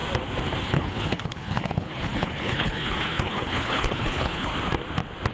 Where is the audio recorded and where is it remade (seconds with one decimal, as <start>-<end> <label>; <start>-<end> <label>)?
0.0-0.6 recorded; 0.6-4.5 remade; 4.5-5.3 recorded